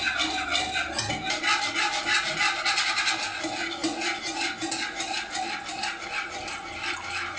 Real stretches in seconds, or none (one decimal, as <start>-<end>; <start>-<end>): 0.0-7.4

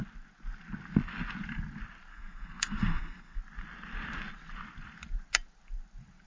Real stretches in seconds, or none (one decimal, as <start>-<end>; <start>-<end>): 0.0-2.1; 3.4-6.3

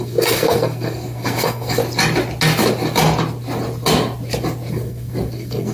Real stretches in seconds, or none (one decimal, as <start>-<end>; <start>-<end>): 1.8-4.7

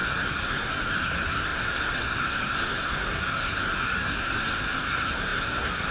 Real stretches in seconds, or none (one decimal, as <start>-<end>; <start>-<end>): none

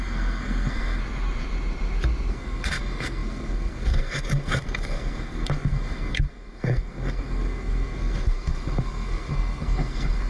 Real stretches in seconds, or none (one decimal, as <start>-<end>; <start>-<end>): 1.0-2.3